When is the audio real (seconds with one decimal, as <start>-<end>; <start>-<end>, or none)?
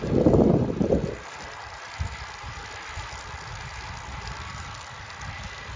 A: 0.0-5.8